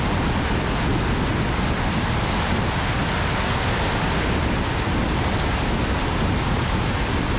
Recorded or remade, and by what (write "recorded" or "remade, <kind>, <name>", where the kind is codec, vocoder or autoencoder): recorded